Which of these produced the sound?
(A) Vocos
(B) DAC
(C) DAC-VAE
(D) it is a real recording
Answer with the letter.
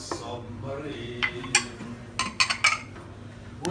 D